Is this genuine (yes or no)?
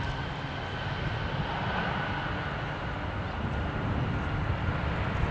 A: yes